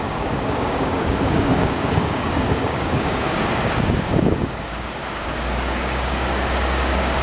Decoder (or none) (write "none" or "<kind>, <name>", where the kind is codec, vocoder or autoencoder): codec, DAC